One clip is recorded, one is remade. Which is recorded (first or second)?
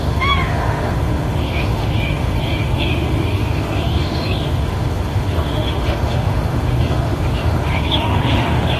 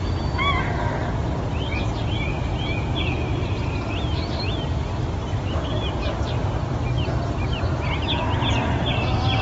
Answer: second